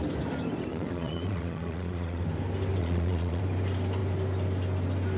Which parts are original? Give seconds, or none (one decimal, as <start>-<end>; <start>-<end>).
0.0-0.7; 2.2-2.8; 3.4-5.2

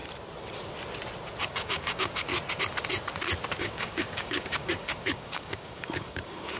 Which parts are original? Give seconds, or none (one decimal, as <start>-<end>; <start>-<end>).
0.0-1.4; 2.3-3.6

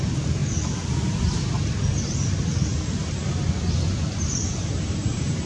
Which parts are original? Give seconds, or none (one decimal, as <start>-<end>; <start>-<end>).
0.0-5.5

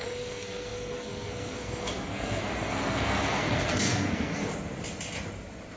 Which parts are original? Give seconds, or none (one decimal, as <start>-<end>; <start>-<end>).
4.5-5.8

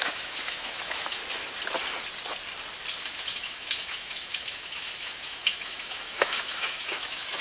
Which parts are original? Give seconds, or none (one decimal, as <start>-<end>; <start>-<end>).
1.2-3.0

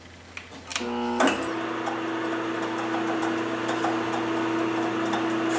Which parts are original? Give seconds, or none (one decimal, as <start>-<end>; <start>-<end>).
0.0-5.6

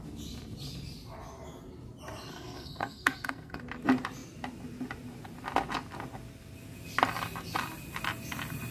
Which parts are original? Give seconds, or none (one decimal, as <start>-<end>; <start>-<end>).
0.0-2.3; 3.6-8.7

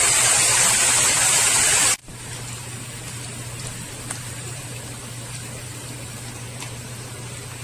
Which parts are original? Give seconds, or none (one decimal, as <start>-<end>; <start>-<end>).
0.0-7.6